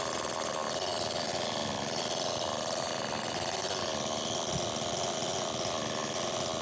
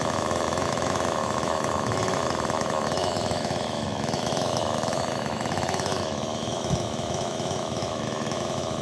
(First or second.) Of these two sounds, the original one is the first